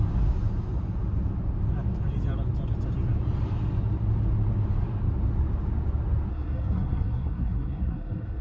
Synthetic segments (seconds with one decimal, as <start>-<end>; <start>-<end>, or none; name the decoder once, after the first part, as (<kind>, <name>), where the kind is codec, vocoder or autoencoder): 6.3-8.4 (codec, SNAC)